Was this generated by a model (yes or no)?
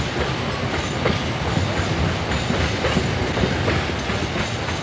no